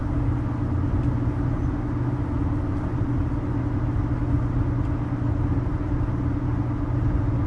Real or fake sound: real